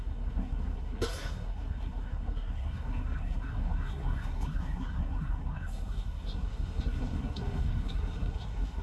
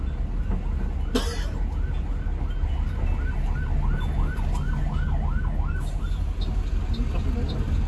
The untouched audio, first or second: second